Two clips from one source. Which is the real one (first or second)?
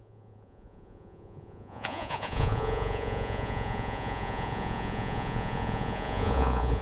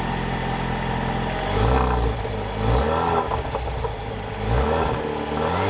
second